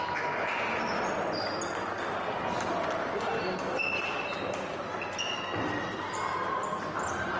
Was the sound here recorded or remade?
recorded